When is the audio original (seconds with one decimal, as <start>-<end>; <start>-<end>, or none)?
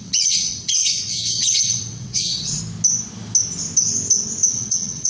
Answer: 2.6-4.5